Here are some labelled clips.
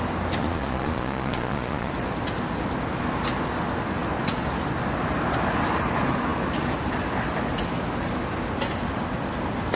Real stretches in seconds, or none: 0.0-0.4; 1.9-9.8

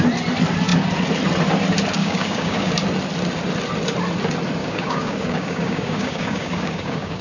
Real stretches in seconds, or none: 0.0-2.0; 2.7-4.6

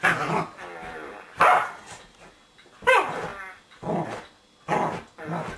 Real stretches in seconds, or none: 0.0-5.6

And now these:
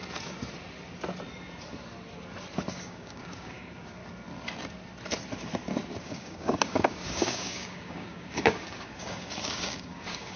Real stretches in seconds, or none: 0.0-2.8; 4.0-6.0

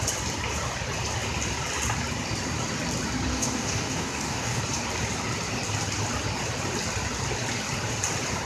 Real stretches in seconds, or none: 0.0-3.3; 4.6-8.5

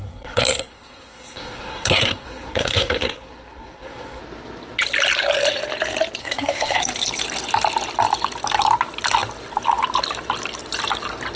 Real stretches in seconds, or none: 4.2-6.2; 6.8-11.4